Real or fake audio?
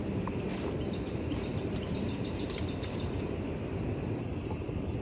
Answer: fake